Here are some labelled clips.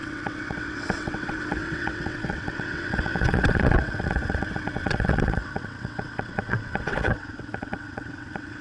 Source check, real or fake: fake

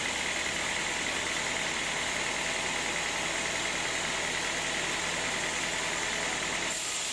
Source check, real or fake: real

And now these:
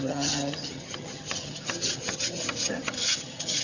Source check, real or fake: fake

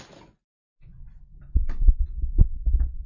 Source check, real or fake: real